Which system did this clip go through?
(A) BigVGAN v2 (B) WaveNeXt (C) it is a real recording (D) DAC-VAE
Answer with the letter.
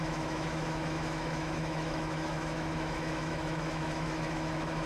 D